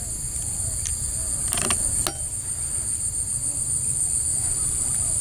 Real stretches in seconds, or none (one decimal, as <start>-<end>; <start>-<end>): 0.0-5.2

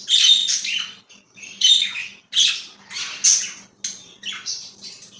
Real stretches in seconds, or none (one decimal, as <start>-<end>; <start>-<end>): 0.0-5.2

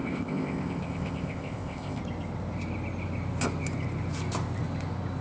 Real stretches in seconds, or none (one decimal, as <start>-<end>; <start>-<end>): 2.0-5.2

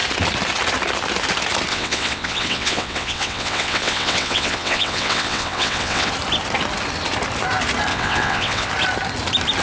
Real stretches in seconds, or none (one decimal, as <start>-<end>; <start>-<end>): 0.0-1.7; 6.1-7.9; 8.7-9.6

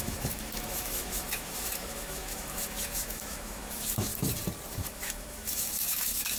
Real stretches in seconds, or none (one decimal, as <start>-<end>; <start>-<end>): 4.1-4.7